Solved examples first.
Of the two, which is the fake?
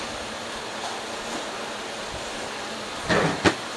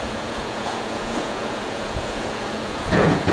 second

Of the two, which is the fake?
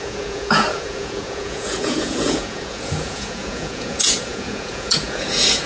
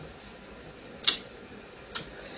first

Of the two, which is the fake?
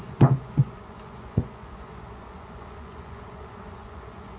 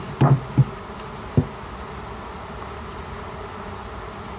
first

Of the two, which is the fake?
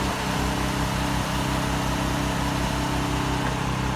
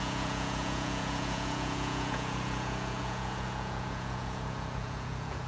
second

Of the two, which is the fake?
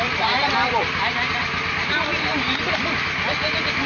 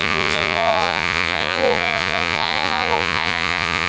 second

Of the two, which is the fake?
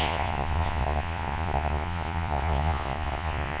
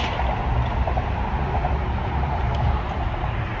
first